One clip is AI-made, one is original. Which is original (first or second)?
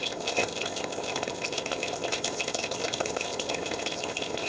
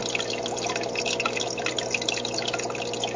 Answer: second